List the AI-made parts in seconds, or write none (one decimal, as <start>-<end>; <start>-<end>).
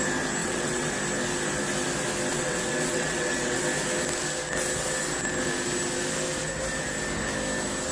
0.4-0.9; 2.3-3.6